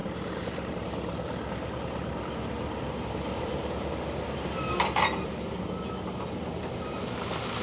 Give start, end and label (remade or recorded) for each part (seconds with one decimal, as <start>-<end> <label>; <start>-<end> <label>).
0.0-0.7 remade; 0.7-7.6 recorded